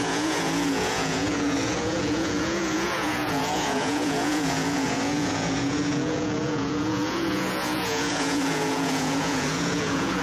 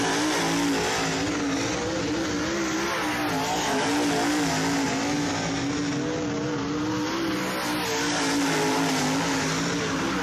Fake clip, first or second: first